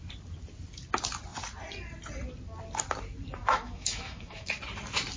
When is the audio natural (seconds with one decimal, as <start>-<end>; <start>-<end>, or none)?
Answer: 0.0-3.4; 4.6-5.2